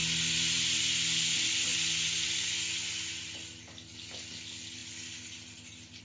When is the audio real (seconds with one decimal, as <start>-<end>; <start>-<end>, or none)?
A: 0.0-6.0